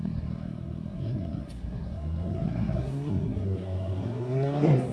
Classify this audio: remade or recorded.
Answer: remade